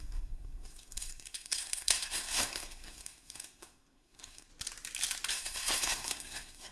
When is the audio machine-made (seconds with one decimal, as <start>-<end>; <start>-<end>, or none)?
0.0-4.5; 5.3-6.7